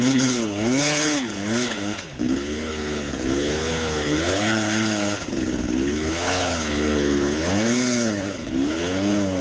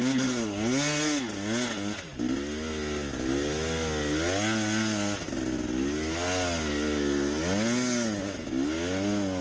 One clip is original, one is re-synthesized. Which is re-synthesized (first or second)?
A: first